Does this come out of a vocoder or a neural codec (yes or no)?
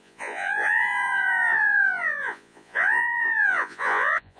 yes